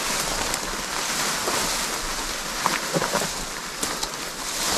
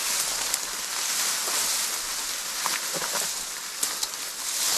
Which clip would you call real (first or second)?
second